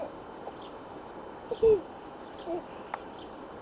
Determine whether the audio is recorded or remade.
recorded